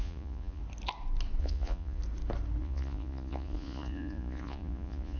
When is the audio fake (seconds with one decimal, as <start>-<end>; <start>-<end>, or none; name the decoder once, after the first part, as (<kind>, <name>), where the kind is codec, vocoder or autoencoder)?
0.0-0.6 (vocoder, Vocos); 1.4-2.0; 2.6-5.2